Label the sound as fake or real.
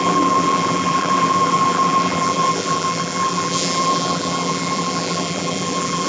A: fake